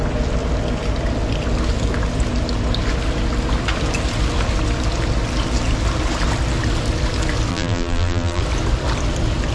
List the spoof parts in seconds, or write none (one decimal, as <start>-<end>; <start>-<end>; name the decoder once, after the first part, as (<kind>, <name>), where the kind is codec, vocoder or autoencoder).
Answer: 7.5-8.4 (vocoder, BigVGAN v2)